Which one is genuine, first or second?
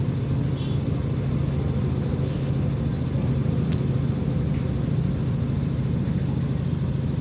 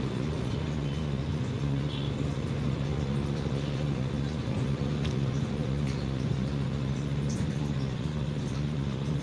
first